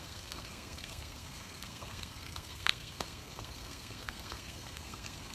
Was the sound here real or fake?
fake